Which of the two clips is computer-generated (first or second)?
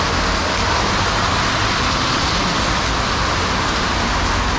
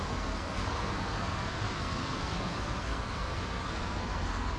second